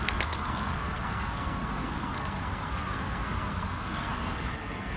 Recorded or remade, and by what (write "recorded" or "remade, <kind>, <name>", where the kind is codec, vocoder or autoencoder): remade, codec, SNAC